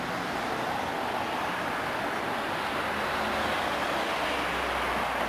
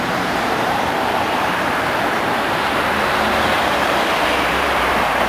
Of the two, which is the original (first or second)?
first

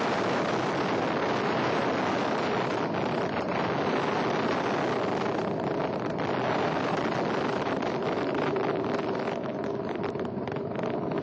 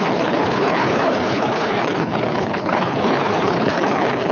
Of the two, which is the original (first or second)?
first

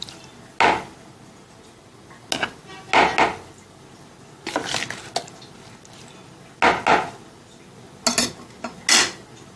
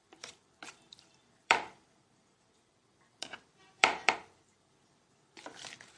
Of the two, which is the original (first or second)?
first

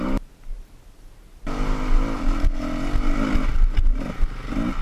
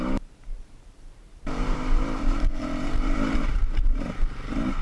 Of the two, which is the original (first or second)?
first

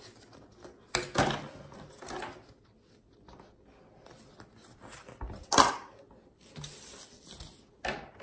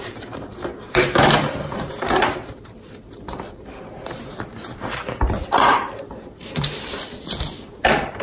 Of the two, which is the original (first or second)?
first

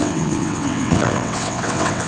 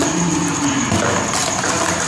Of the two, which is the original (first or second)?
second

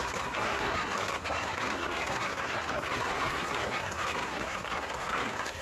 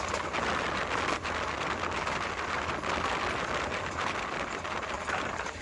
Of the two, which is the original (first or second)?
second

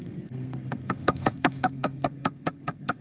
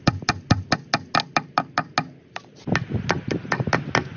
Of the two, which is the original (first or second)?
second